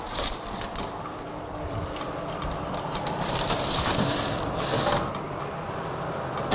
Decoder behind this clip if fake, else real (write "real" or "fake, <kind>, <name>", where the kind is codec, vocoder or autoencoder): fake, vocoder, BigVGAN v2